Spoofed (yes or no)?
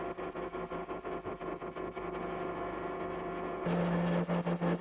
no